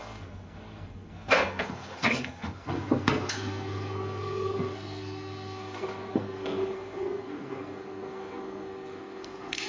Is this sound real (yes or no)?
no